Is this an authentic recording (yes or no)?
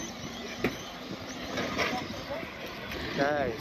yes